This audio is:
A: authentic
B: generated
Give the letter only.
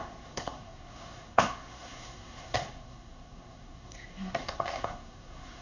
B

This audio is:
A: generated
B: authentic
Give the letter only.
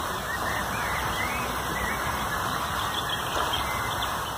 A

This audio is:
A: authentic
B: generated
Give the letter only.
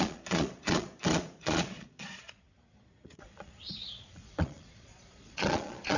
B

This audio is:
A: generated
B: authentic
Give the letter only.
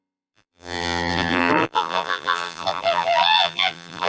A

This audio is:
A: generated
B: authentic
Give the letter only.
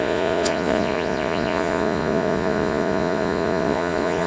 A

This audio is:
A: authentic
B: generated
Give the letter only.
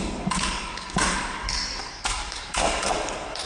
B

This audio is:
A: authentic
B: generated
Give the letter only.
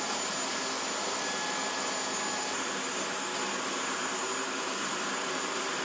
A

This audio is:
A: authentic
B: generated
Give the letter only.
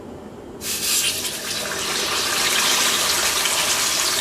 A